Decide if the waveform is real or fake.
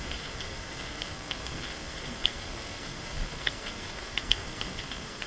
fake